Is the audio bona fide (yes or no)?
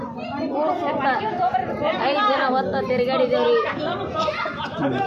yes